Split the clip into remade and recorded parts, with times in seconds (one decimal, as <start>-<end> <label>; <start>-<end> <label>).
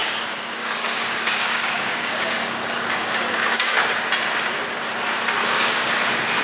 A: 0.0-3.8 remade; 3.8-5.4 recorded; 5.4-5.9 remade; 5.9-6.4 recorded